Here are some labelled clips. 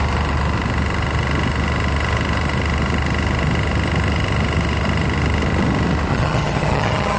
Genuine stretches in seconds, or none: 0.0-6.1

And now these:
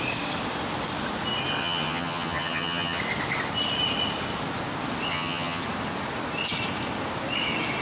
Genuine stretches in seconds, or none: 0.0-1.6; 3.0-5.1; 5.6-7.8

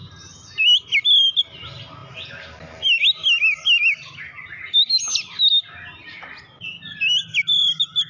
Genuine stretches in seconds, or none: 0.0-8.1

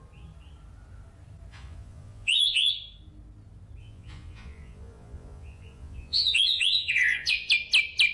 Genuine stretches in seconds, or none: 0.0-1.5; 2.7-3.8; 7.5-8.1

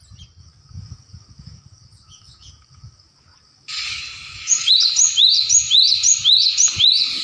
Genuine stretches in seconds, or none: 0.0-0.4; 4.7-7.2

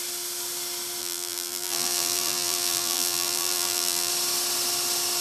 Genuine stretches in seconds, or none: 0.0-1.0; 4.1-5.2

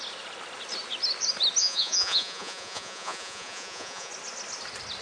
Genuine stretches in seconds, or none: 0.0-1.6; 4.1-5.0